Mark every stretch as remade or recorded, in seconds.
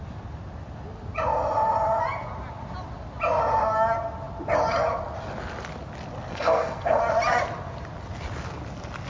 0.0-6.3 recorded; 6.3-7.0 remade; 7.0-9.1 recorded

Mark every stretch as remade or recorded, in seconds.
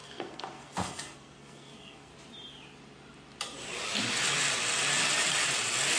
0.0-2.1 remade; 2.1-6.0 recorded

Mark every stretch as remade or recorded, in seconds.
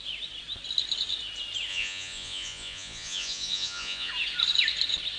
0.0-1.7 recorded; 1.7-4.1 remade; 4.1-5.2 recorded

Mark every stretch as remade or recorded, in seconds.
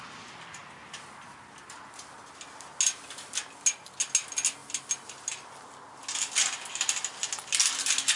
0.0-8.2 recorded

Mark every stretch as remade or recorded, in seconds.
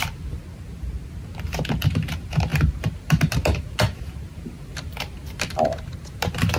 0.0-0.4 remade; 0.4-1.9 recorded; 1.9-6.6 remade